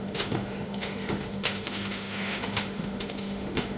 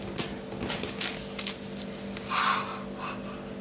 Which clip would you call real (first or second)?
second